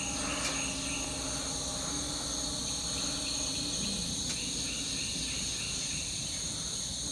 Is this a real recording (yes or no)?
yes